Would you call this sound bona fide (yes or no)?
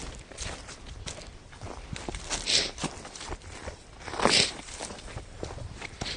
yes